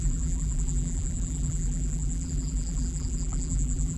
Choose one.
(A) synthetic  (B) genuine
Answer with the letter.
A